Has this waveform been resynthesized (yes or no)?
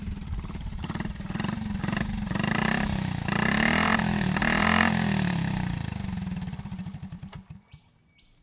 yes